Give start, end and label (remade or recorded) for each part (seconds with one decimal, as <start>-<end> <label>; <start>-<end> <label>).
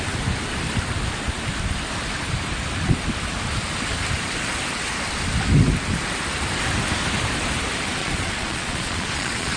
0.0-8.0 recorded; 8.0-9.6 remade